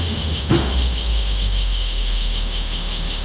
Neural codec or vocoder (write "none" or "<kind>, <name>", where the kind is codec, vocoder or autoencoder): autoencoder, DAC-VAE